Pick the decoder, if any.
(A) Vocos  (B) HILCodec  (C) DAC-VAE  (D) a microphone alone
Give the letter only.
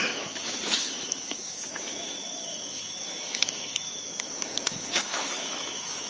C